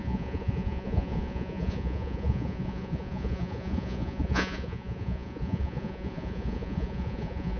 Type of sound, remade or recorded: remade